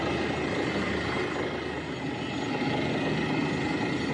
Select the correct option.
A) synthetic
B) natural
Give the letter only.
B